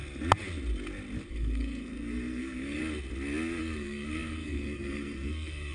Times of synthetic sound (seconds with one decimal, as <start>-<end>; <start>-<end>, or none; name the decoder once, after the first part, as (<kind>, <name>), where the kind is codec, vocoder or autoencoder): 1.3-2.8 (codec, SNAC); 3.6-5.7